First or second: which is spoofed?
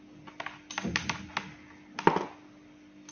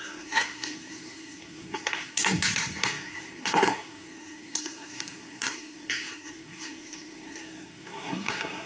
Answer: second